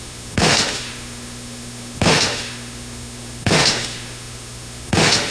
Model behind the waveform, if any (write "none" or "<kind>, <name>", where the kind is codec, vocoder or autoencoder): autoencoder, DAC-VAE